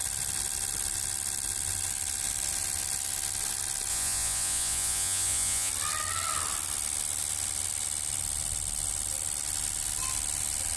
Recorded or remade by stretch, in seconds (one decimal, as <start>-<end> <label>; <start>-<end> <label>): 0.0-3.9 recorded; 3.9-5.7 remade; 5.7-10.8 recorded